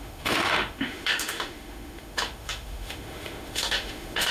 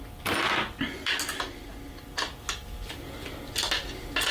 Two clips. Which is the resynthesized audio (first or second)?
first